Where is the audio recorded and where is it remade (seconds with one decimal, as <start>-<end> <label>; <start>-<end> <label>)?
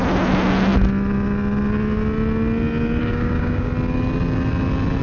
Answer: 0.0-3.0 recorded; 3.0-3.7 remade; 3.7-5.0 recorded